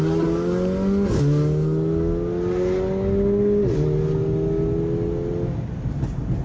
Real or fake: real